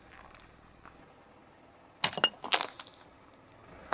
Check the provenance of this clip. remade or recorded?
recorded